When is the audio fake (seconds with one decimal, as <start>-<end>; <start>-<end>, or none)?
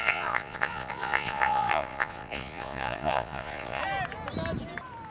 0.0-3.8